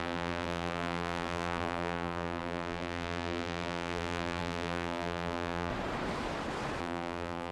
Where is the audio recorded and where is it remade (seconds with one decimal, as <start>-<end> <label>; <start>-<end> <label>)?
0.0-5.7 remade; 5.7-6.8 recorded; 6.8-7.5 remade